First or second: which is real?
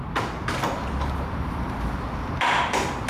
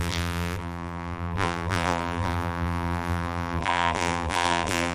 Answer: first